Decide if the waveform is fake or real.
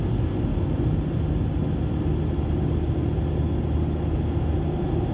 real